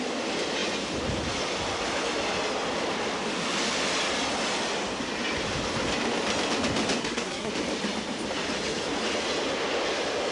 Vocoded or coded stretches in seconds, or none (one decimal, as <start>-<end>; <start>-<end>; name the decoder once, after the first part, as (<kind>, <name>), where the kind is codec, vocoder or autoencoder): 7.0-7.5 (codec, SNAC)

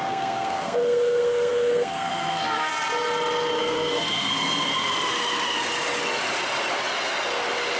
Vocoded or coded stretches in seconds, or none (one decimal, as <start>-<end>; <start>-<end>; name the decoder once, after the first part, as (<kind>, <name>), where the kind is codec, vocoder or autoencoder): 0.0-2.7 (codec, SNAC); 3.6-4.7

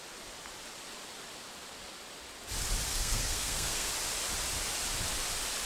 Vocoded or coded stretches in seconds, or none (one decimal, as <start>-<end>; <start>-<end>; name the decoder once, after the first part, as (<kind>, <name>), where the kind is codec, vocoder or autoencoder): 2.9-3.9 (codec, SNAC)

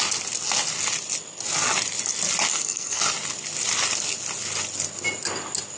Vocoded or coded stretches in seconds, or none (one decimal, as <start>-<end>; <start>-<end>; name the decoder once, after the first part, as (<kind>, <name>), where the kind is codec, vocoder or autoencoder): 2.5-3.0 (codec, SNAC)

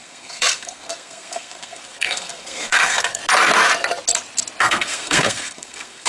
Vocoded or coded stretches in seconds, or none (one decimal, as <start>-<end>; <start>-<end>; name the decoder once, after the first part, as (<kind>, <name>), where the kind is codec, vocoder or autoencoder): 0.0-3.2 (codec, SNAC); 4.6-6.1

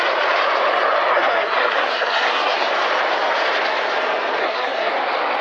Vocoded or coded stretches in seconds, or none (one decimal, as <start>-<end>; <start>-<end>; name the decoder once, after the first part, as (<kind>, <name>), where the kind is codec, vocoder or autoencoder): 1.1-2.7 (codec, SNAC); 4.4-4.9

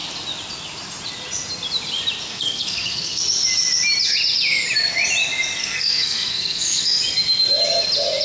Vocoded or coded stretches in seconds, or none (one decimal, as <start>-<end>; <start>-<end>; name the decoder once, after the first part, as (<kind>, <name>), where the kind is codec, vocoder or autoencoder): 2.3-3.2 (codec, SNAC); 5.6-7.0

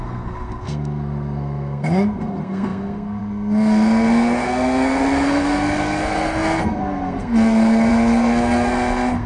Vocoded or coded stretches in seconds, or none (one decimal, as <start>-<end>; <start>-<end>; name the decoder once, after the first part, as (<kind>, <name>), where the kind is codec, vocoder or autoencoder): 0.0-9.3 (codec, SNAC)